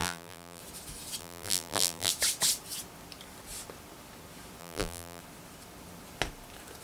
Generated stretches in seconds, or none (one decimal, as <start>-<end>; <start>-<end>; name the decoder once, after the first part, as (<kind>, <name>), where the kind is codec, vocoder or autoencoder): 0.0-0.6 (vocoder, BigVGAN v2); 1.2-2.1; 4.6-5.2